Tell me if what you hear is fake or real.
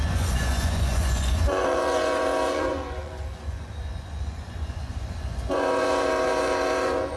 fake